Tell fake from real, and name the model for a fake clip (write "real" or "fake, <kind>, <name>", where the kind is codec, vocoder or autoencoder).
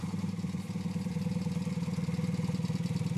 fake, vocoder, BigVGAN v2